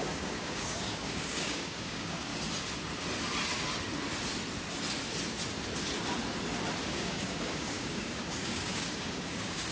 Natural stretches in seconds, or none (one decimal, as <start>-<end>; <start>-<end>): 2.3-6.8